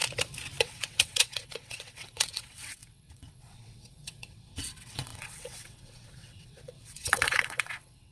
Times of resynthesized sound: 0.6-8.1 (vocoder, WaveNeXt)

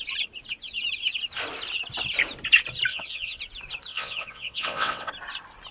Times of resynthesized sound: 2.9-3.4 (vocoder, WaveNeXt); 3.9-5.1

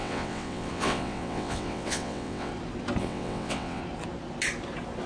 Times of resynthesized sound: 0.0-2.5 (vocoder, WaveNeXt); 3.0-3.8

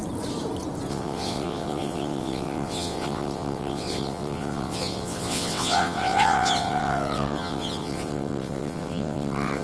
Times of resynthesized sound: 0.9-9.6 (vocoder, WaveNeXt)

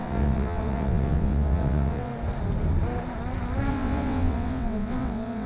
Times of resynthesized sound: 0.0-2.1 (vocoder, WaveNeXt); 3.7-5.5

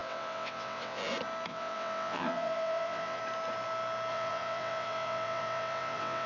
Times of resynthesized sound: 0.0-1.0 (vocoder, WaveNeXt); 1.5-3.2; 4.1-6.3

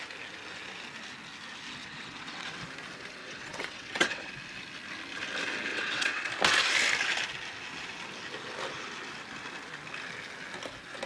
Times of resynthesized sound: 1.8-2.6 (vocoder, WaveNeXt); 3.2-4.3; 5.7-6.3

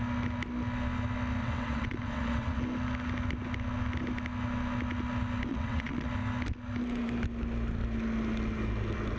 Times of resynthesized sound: 1.4-2.6 (vocoder, WaveNeXt); 5.5-6.1